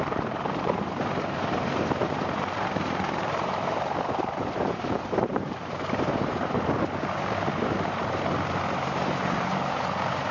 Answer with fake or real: fake